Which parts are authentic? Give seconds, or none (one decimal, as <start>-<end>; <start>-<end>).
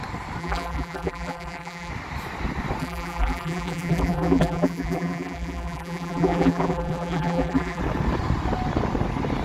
0.0-0.4; 1.9-2.8; 7.8-9.4